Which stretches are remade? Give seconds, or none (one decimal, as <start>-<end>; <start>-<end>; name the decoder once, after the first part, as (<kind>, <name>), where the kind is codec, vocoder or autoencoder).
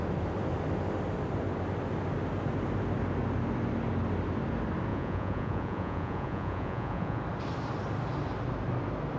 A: 4.9-7.2 (vocoder, Vocos)